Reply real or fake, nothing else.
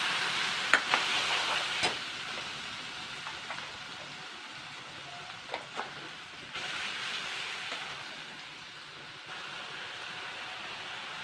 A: real